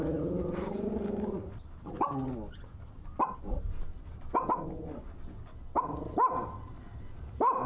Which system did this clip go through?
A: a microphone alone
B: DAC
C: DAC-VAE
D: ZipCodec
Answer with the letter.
A